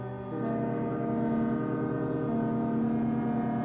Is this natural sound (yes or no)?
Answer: yes